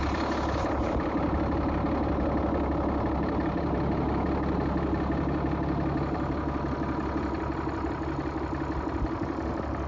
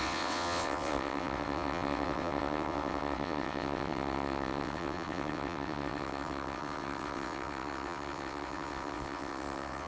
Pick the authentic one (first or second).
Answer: first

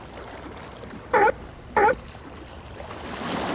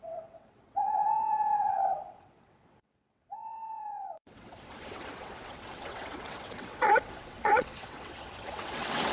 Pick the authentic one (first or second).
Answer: first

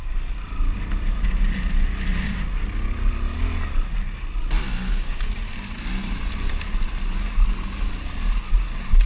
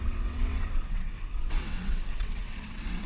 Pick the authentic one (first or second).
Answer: first